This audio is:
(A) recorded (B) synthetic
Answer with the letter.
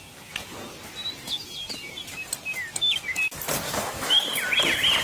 A